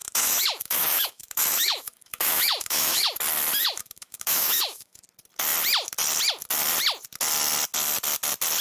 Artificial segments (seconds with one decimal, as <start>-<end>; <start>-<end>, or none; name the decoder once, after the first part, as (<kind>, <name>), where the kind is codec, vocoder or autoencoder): 0.0-3.2 (autoencoder, DAC-VAE); 3.6-5.0